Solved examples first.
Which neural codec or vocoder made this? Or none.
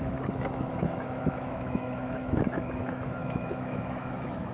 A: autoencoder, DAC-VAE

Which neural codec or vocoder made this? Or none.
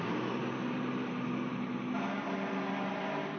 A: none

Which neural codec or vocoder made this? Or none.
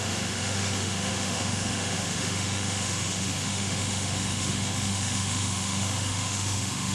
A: autoencoder, DAC-VAE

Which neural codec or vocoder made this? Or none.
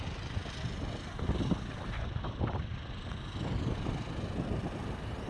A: none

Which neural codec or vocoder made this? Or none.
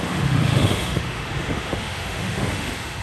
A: autoencoder, DAC-VAE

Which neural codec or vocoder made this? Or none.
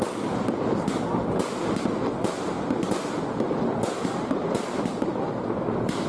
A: none